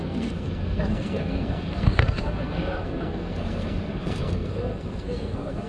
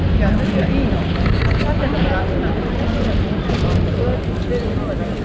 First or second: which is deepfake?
first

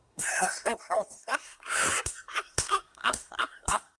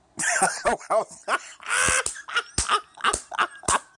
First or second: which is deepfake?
first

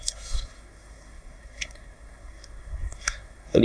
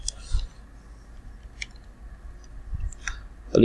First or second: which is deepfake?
first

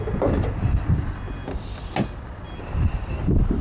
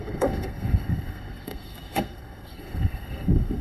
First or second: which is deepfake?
second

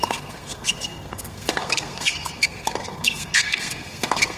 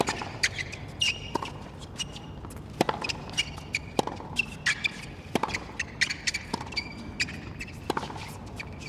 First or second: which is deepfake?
first